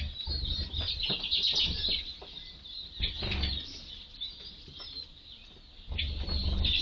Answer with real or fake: real